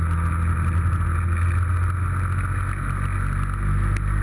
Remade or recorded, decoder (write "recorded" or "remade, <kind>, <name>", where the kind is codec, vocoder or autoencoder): recorded